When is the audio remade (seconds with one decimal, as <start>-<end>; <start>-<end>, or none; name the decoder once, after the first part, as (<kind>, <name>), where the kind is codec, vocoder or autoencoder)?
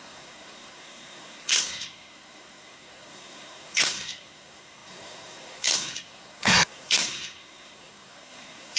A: 0.0-8.8 (codec, SNAC)